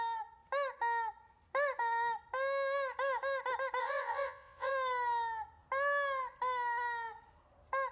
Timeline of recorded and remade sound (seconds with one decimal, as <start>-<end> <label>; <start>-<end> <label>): 0.0-3.8 recorded; 3.8-4.7 remade; 4.7-7.9 recorded